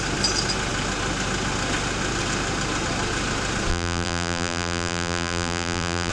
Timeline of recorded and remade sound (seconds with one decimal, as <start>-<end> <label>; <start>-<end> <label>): 0.0-3.7 recorded; 3.7-6.1 remade